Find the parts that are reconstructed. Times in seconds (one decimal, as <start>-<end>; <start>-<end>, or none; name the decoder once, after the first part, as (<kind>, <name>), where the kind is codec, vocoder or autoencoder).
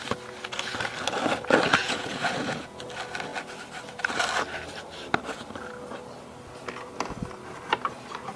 1.8-2.8 (vocoder, Vocos)